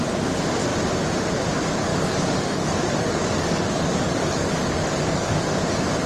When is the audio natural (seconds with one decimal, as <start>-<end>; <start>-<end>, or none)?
0.0-1.9; 5.4-6.1